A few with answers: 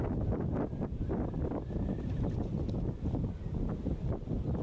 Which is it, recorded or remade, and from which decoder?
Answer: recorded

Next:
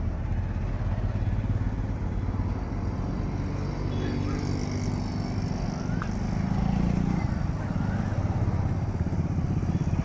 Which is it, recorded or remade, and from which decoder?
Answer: recorded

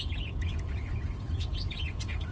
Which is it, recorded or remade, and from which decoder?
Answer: remade, vocoder, Vocos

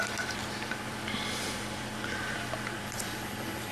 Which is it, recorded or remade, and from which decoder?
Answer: remade, vocoder, BigVGAN v2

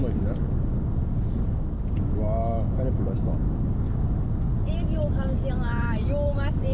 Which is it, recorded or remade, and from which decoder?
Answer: recorded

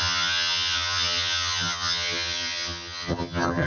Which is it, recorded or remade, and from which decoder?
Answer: remade, vocoder, HiFi-GAN